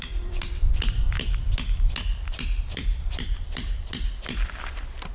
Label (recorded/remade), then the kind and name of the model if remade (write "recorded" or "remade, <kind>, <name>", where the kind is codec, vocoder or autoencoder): remade, vocoder, BigVGAN v2